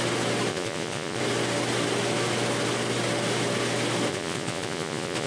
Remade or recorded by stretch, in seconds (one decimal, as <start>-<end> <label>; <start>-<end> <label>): 0.0-0.5 recorded; 0.5-1.2 remade; 1.2-4.1 recorded; 4.1-5.3 remade